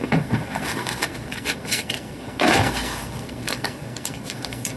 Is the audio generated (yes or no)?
yes